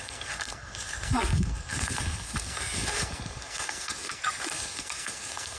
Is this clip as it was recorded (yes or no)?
no